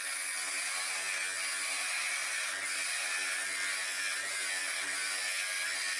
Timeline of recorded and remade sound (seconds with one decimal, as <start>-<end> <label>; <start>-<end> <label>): 0.0-6.0 recorded